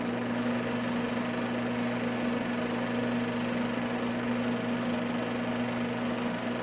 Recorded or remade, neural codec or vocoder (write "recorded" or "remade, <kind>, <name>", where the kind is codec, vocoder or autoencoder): recorded